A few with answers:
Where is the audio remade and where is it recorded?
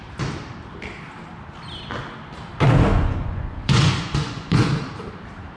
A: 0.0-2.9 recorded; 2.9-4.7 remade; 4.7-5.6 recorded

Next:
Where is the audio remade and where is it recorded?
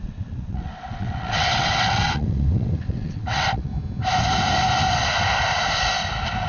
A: 0.0-3.7 remade; 3.7-6.5 recorded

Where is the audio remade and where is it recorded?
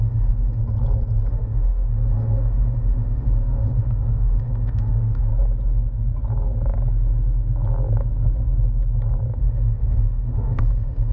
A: 0.0-0.6 remade; 0.6-1.3 recorded; 1.3-5.3 remade; 5.3-9.4 recorded; 9.4-11.1 remade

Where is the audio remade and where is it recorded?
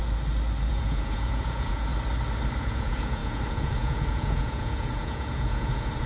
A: 0.0-0.7 recorded; 0.7-1.9 remade; 1.9-2.6 recorded; 2.6-6.1 remade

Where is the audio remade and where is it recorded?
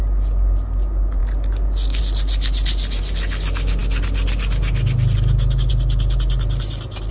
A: 0.0-7.1 recorded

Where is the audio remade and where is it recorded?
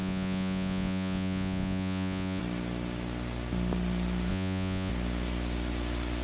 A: 0.0-2.4 remade; 2.4-4.3 recorded; 4.3-4.9 remade; 4.9-6.2 recorded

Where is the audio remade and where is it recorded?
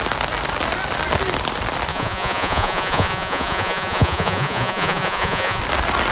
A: 0.0-1.9 recorded; 1.9-5.6 remade; 5.6-6.1 recorded